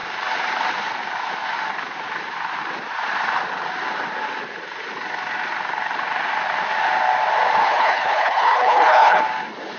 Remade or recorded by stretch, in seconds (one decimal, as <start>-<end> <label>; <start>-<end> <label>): 0.0-7.6 recorded; 7.6-9.2 remade; 9.2-9.8 recorded